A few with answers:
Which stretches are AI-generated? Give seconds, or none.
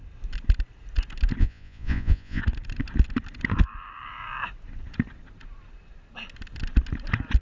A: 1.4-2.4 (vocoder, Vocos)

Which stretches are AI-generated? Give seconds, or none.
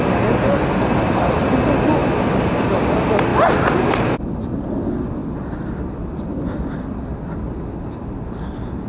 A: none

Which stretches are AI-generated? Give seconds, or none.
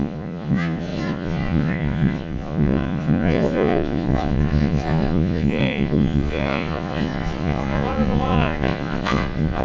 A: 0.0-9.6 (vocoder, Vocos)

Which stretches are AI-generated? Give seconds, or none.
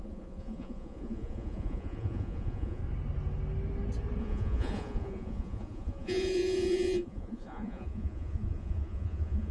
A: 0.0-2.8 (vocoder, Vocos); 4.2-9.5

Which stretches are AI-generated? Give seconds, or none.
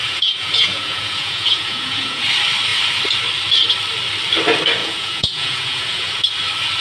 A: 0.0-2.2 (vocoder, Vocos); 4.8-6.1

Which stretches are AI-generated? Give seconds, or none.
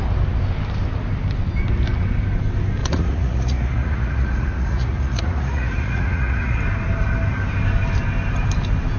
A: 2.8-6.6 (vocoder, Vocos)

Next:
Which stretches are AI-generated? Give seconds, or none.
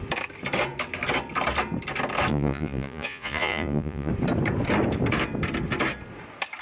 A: 2.3-4.1 (vocoder, Vocos)